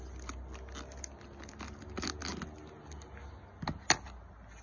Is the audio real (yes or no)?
yes